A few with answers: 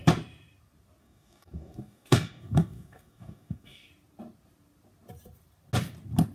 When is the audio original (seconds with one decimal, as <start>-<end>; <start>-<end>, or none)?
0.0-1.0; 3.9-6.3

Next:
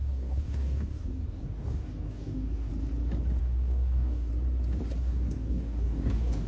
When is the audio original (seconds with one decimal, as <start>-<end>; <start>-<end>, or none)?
2.7-3.4; 4.3-5.0

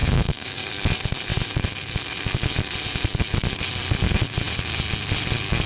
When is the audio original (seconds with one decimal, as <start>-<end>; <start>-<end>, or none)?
0.7-5.7

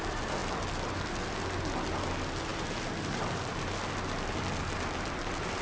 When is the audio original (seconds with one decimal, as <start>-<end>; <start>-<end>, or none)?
0.0-5.6

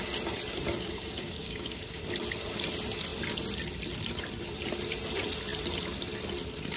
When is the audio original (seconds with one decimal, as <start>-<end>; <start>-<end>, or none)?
0.0-0.8; 2.0-6.8

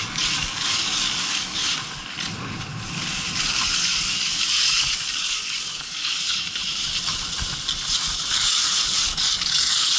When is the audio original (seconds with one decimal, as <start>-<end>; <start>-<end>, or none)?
1.6-3.4; 6.6-8.3